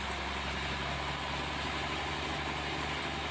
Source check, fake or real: real